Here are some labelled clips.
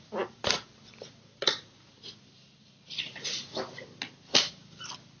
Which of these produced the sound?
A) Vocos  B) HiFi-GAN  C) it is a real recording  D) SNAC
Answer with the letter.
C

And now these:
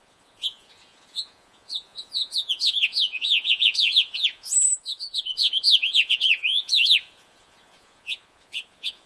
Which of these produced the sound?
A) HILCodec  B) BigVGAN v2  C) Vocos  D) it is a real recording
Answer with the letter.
C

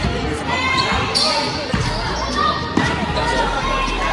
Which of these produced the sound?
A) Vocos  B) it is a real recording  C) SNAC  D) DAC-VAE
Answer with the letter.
B